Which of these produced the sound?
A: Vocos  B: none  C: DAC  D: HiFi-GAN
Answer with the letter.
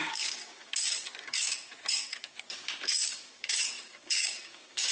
C